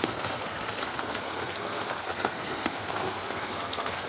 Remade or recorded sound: remade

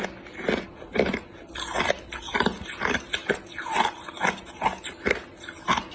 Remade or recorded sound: recorded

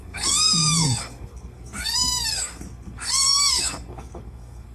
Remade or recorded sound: remade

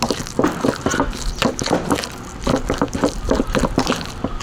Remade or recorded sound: recorded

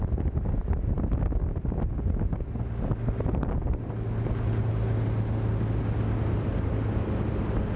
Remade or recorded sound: recorded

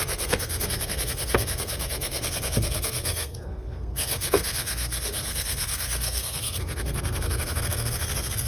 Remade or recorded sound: remade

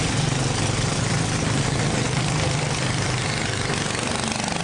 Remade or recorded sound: recorded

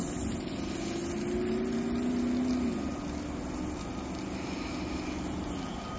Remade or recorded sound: recorded